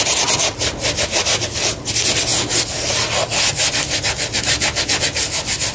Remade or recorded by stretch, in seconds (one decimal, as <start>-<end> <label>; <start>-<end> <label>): 0.0-5.7 recorded